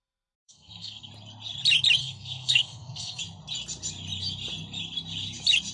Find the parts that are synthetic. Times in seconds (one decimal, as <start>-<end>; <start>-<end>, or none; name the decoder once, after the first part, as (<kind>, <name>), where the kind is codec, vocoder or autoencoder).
0.4-1.1 (codec, SNAC); 2.0-3.2